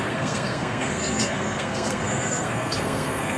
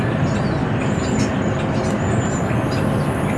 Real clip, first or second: second